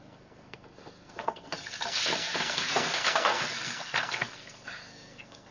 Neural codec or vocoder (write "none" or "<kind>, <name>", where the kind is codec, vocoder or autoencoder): codec, SNAC